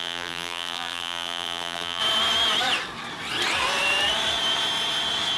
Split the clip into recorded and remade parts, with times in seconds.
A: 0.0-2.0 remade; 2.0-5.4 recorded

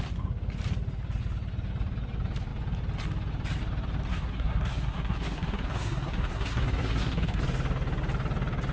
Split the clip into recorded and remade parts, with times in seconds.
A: 0.0-4.1 recorded; 4.1-7.4 remade; 7.4-8.7 recorded